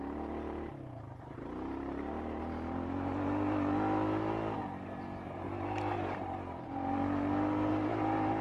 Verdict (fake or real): real